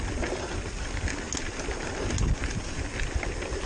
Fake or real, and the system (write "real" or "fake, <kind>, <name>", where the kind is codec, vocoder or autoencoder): real